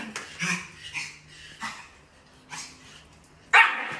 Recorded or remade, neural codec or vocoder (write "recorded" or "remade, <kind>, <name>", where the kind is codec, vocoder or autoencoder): recorded